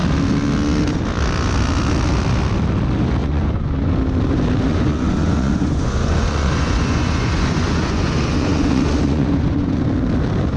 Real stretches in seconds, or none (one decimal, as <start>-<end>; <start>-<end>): 0.0-3.2; 3.9-4.7; 9.9-10.6

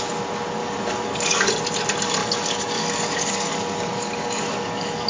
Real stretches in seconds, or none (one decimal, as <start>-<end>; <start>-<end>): 0.0-0.6; 1.5-2.2

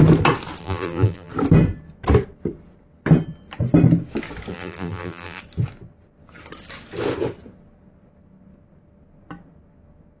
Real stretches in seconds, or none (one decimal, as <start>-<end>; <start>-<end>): 0.0-0.6; 1.3-4.5; 5.4-10.2

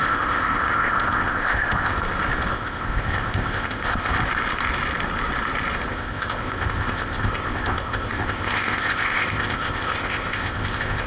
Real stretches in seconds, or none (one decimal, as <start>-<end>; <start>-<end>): 1.9-2.5; 4.1-5.9

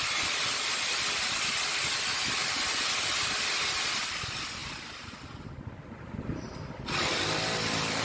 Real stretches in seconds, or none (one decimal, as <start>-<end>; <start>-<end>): 0.0-8.0

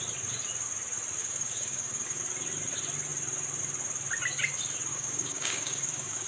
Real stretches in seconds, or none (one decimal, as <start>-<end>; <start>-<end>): 0.0-1.2; 2.2-4.9

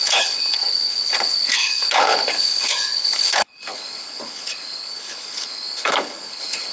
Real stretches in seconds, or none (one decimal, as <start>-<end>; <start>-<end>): none

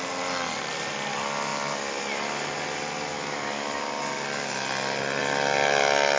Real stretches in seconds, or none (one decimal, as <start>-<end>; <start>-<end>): 0.0-6.2